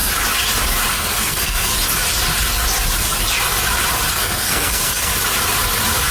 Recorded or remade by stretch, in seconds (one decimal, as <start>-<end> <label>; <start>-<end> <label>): 0.0-0.9 recorded; 0.9-1.7 remade; 1.7-4.1 recorded; 4.1-5.1 remade; 5.1-6.1 recorded